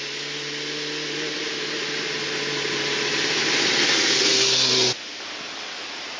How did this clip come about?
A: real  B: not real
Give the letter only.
A